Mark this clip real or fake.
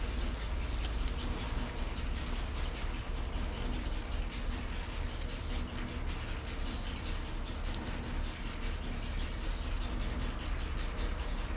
real